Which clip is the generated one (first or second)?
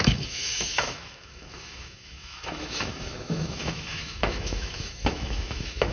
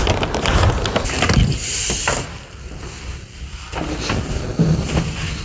first